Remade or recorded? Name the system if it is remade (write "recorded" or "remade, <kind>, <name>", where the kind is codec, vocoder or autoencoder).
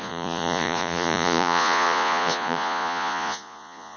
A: remade, vocoder, Vocos